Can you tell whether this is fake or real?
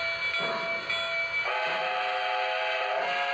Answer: real